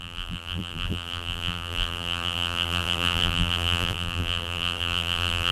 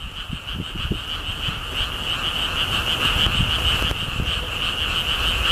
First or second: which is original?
second